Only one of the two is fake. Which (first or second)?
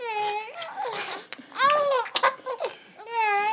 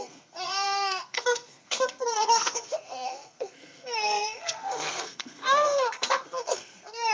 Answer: second